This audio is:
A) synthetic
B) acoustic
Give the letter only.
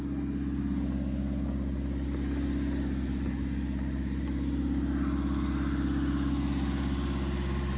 B